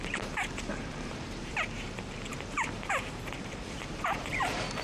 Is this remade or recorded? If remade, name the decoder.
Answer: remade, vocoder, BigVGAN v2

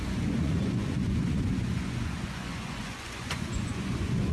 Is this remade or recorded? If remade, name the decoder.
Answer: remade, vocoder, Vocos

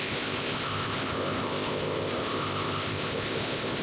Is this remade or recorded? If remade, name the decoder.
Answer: remade, codec, ZipCodec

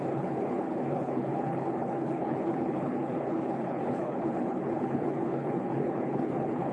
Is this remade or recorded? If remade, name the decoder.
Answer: remade, codec, HILCodec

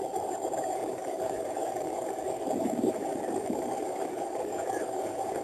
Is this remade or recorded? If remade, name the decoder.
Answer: remade, codec, DAC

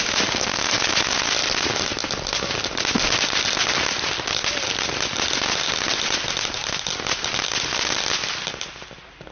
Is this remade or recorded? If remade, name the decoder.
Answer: recorded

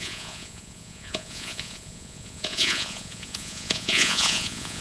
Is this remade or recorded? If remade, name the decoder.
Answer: remade, vocoder, Vocos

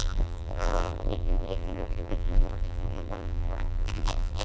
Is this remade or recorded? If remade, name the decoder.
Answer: remade, vocoder, BigVGAN v2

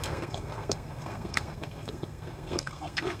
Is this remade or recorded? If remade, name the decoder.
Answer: remade, codec, SNAC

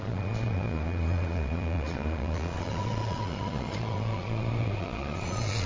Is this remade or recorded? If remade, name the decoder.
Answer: remade, vocoder, Vocos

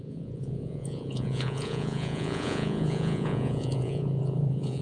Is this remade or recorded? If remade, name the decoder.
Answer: remade, vocoder, Vocos